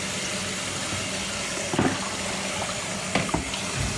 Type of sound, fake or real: real